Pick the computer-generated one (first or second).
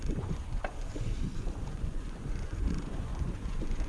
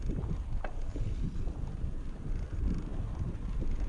first